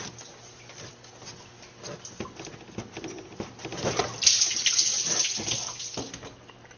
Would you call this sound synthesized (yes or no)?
no